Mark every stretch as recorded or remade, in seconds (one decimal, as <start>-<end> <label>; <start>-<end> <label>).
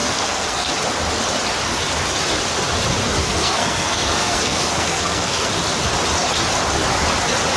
0.0-0.7 remade; 0.7-3.2 recorded; 3.2-5.5 remade; 5.5-7.6 recorded